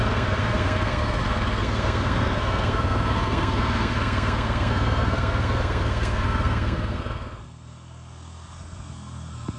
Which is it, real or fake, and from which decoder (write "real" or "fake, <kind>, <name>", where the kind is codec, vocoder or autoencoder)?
fake, codec, SNAC